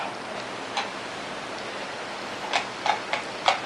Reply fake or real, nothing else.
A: real